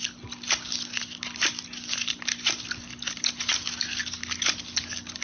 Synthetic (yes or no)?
no